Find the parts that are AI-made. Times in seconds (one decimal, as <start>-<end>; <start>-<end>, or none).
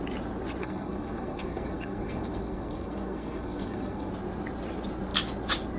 0.6-4.1